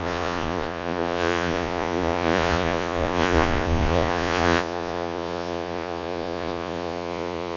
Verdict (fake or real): fake